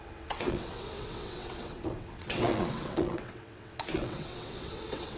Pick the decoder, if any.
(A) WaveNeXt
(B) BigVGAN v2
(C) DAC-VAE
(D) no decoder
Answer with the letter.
A